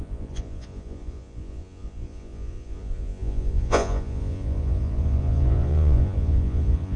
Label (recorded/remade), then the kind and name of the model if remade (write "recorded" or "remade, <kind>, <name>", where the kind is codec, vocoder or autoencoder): remade, vocoder, Vocos